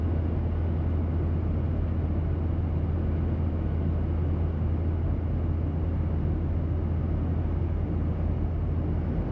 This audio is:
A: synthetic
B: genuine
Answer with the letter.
B